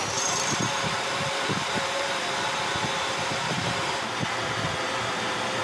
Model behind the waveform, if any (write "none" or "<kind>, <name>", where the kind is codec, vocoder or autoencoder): vocoder, BigVGAN v2